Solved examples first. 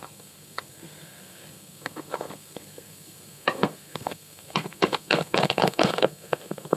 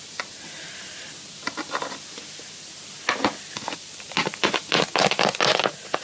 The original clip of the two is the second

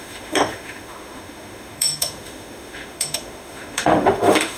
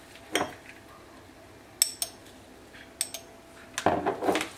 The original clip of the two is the second